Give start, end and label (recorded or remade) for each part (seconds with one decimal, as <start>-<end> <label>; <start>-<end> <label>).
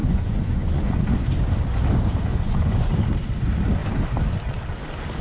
0.0-1.0 remade; 1.0-2.3 recorded; 2.3-2.9 remade; 2.9-5.2 recorded